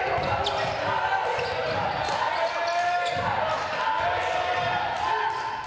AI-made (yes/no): no